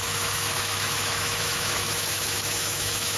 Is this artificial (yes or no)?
yes